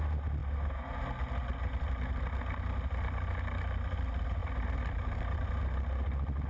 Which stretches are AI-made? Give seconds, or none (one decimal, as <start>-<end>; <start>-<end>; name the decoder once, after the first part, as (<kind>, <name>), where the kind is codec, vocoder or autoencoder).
4.4-5.6 (vocoder, BigVGAN v2)